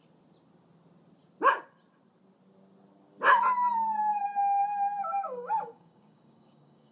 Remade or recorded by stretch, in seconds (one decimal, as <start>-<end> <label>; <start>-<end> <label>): 0.0-4.1 recorded; 4.1-6.9 remade